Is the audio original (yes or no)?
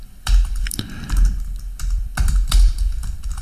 no